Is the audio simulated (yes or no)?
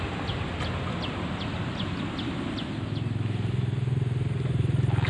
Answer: no